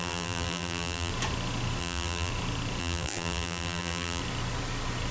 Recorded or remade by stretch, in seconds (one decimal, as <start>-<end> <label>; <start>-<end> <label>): 0.0-1.1 remade; 1.1-1.8 recorded; 1.8-2.3 remade; 2.3-2.8 recorded; 2.8-4.2 remade; 4.2-5.1 recorded